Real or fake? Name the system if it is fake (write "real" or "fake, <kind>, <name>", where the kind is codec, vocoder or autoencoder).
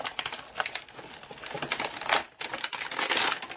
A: real